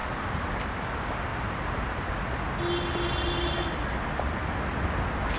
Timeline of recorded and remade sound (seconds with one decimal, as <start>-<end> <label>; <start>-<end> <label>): 0.0-1.3 recorded; 1.3-2.1 remade; 2.1-5.4 recorded